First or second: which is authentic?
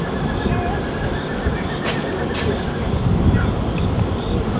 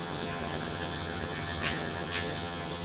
first